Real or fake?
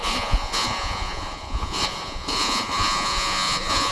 fake